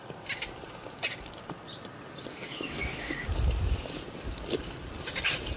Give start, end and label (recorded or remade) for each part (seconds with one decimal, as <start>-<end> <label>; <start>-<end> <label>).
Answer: 0.0-2.3 recorded; 2.3-3.3 remade; 3.3-5.6 recorded